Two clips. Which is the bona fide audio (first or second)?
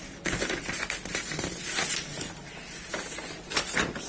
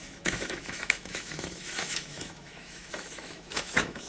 first